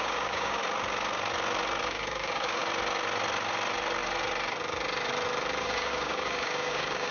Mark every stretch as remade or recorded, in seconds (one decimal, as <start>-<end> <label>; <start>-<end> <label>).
0.0-0.6 remade; 0.6-1.8 recorded; 1.8-2.6 remade; 2.6-5.6 recorded; 5.6-7.1 remade